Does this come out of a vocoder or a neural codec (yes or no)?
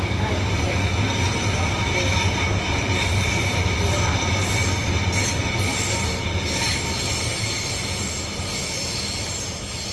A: no